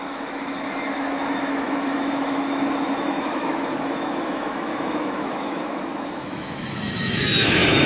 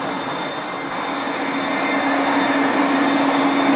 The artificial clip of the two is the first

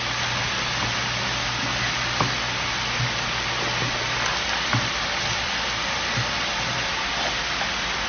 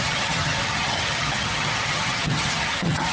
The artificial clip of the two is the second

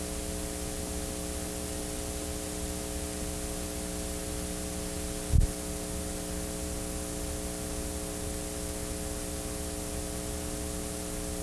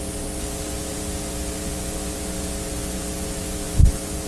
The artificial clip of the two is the second